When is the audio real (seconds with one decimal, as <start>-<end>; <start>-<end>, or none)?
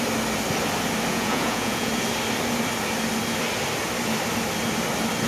0.0-1.1; 1.9-5.3